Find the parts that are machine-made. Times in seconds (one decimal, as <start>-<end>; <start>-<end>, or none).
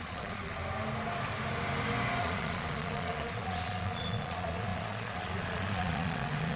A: 0.0-0.6; 2.2-6.6